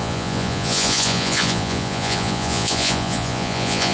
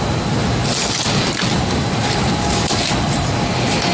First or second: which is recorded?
second